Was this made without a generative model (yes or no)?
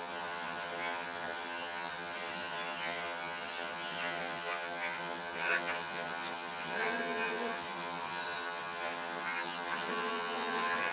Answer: no